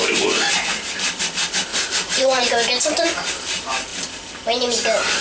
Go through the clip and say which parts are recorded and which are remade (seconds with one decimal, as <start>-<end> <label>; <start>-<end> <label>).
0.0-1.7 recorded; 1.7-2.4 remade; 2.4-5.2 recorded